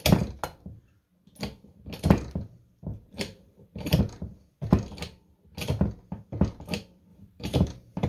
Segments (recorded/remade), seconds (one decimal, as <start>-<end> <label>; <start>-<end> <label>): 0.0-2.9 recorded; 2.9-4.0 remade; 4.0-7.1 recorded; 7.1-8.1 remade